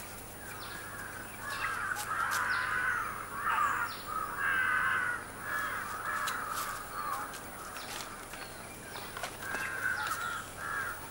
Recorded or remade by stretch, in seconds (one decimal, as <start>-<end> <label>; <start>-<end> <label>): 0.0-9.2 recorded; 9.2-10.1 remade; 10.1-11.1 recorded